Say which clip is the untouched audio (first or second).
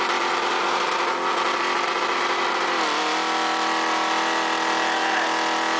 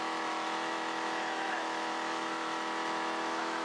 first